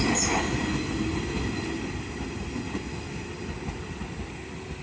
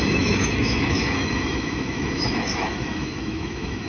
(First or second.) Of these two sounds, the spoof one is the second